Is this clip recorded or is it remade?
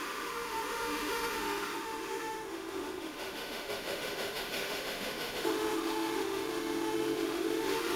remade